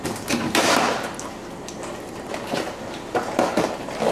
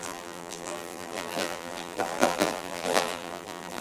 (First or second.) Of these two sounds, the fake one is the second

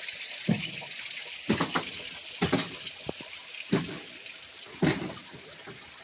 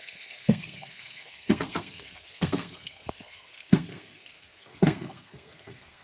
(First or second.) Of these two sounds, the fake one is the second